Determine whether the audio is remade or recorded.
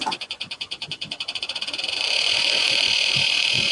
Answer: remade